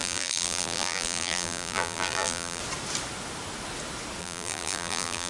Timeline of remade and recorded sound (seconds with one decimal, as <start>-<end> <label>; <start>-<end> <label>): 0.0-2.6 remade; 2.6-4.2 recorded; 4.2-5.3 remade